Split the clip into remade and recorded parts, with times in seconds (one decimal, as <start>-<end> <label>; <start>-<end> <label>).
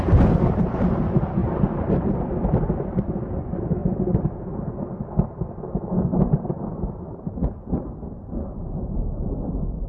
0.0-1.4 recorded; 1.4-2.1 remade; 2.1-3.8 recorded; 3.8-4.5 remade; 4.5-6.1 recorded; 6.1-9.3 remade; 9.3-9.9 recorded